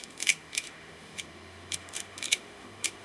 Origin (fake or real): fake